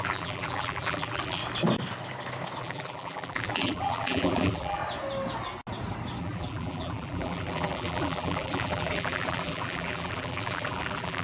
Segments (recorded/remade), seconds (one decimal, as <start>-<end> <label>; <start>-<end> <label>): 0.0-1.4 remade; 1.4-2.6 recorded; 2.6-4.8 remade; 4.8-6.2 recorded; 6.2-11.2 remade